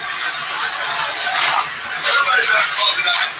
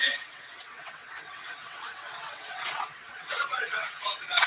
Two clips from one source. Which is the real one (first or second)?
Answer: first